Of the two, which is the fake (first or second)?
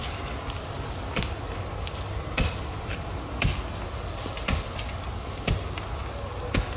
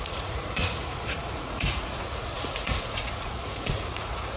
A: second